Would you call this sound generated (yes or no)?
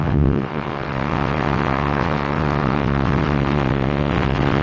yes